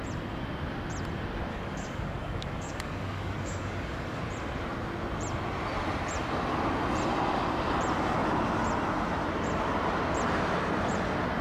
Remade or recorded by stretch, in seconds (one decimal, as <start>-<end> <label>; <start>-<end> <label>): 0.0-1.5 recorded; 1.5-4.2 remade; 4.2-11.4 recorded